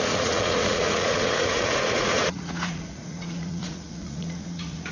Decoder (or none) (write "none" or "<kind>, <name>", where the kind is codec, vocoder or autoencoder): vocoder, Vocos